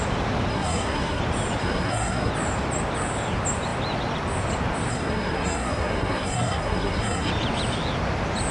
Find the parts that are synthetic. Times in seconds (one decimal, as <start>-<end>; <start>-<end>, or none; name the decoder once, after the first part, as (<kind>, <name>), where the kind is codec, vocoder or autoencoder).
0.5-1.2 (codec, SNAC); 1.6-2.3; 4.9-7.3